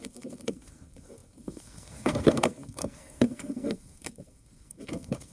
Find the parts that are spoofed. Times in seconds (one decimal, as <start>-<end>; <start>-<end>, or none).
0.0-5.3